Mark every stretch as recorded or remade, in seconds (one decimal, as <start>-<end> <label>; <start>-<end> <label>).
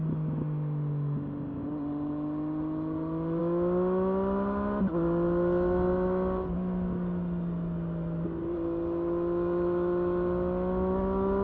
0.0-11.4 recorded